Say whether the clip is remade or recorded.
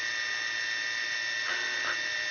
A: recorded